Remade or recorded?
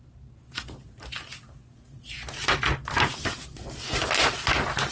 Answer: recorded